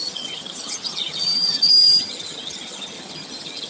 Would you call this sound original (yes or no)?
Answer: no